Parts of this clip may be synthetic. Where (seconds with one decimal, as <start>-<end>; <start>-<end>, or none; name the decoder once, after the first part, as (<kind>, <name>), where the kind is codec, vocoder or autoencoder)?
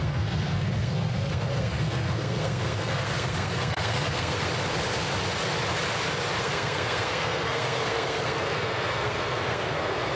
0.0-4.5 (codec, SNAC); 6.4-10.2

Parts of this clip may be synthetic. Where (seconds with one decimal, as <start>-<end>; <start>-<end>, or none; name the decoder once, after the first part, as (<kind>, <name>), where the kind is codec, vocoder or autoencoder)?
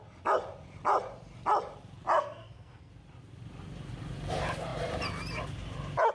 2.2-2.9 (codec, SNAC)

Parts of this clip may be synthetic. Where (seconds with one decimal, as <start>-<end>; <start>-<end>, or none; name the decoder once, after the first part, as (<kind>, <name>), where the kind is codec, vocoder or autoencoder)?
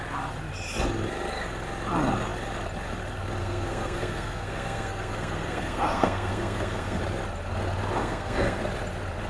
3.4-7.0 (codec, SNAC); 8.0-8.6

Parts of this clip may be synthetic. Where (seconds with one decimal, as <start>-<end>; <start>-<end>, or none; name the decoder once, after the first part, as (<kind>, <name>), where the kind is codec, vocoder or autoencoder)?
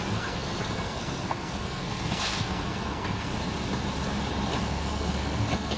0.0-3.3 (codec, SNAC); 4.5-5.8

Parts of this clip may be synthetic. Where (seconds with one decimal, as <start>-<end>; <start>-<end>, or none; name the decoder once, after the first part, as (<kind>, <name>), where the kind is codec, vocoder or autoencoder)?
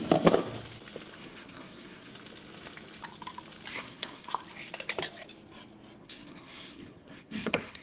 1.2-2.1 (codec, SNAC); 3.7-4.3; 6.0-7.8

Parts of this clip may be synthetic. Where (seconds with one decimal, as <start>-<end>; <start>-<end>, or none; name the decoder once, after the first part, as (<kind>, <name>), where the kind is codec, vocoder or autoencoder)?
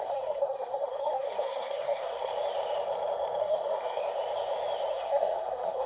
0.0-2.3 (codec, SNAC); 3.4-4.0; 4.9-5.9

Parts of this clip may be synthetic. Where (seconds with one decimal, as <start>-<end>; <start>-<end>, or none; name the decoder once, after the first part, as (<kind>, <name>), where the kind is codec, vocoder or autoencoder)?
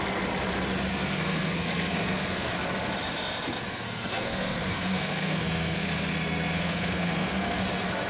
0.9-2.5 (codec, SNAC); 3.7-7.6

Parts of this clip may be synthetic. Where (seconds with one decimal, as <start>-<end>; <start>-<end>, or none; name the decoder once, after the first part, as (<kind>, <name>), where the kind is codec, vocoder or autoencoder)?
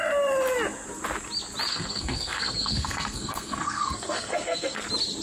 1.7-4.8 (codec, SNAC)